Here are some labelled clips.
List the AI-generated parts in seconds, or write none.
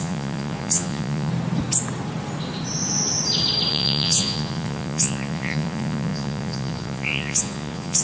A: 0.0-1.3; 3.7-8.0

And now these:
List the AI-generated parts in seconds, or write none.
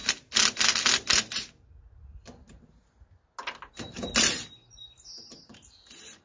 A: 3.7-6.2